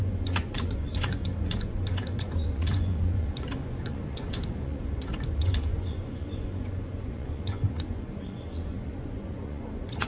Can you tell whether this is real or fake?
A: fake